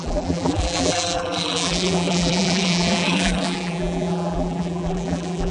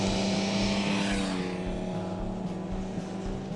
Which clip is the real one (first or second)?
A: second